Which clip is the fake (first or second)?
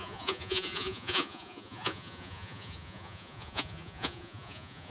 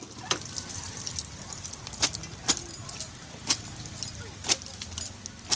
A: first